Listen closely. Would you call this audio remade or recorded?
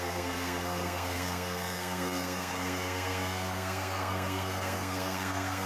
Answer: remade